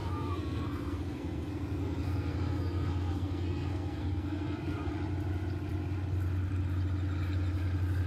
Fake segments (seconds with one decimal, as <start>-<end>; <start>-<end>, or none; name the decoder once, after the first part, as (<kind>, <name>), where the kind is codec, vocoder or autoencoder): 0.0-4.9 (codec, SNAC)